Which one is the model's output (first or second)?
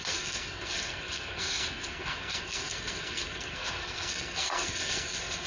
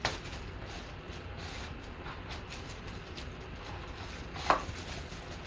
first